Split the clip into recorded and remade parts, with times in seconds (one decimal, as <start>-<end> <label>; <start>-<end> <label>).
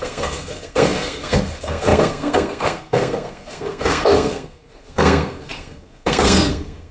0.0-6.9 remade